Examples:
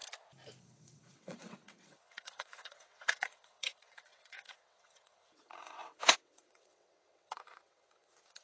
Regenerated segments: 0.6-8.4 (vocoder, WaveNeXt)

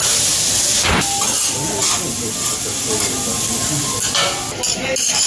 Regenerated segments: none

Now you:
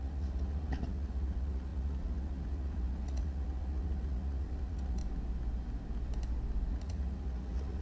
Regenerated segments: 0.0-5.0 (vocoder, Vocos); 6.7-7.8

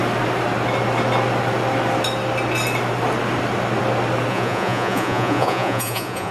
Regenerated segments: 4.3-6.3 (vocoder, Vocos)

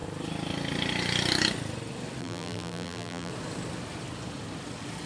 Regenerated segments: 2.2-3.3 (vocoder, BigVGAN v2)

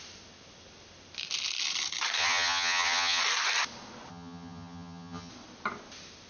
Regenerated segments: 2.2-3.2 (vocoder, HiFi-GAN); 4.1-5.3

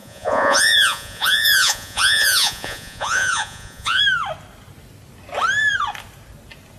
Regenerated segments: 0.0-4.0 (vocoder, Vocos)